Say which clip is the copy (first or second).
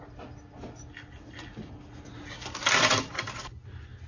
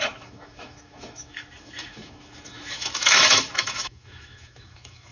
second